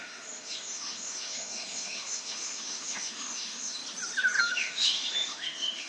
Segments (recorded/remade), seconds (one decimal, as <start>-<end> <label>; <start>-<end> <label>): 0.0-3.8 remade; 3.8-4.4 recorded; 4.4-5.9 remade